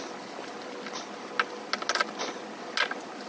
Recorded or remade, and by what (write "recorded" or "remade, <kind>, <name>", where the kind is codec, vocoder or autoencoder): recorded